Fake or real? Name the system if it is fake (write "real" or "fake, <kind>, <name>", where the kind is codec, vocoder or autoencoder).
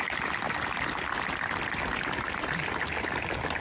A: real